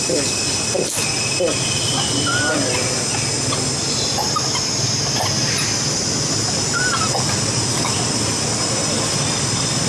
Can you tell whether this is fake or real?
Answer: real